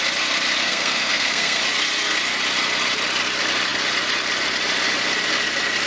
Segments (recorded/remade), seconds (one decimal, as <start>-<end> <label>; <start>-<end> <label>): 0.0-0.6 recorded; 0.6-1.6 remade; 1.6-5.9 recorded